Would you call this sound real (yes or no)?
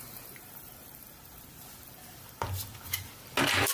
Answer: no